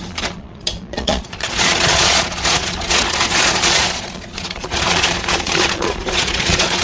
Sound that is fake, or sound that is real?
fake